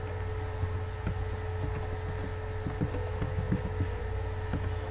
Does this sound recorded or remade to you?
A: recorded